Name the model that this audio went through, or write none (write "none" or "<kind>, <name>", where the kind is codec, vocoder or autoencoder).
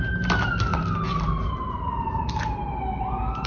none